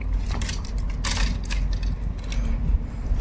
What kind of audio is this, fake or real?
real